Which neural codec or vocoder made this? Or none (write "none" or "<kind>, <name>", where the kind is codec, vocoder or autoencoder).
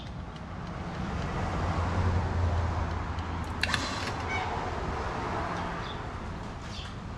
none